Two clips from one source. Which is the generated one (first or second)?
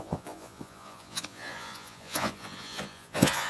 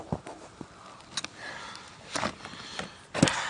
first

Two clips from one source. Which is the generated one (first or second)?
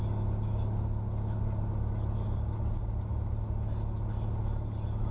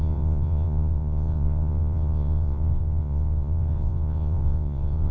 second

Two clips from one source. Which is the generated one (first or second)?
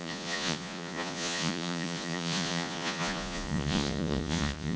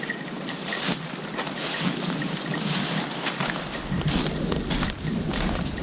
first